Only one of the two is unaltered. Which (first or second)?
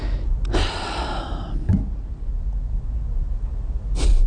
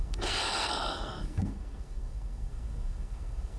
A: first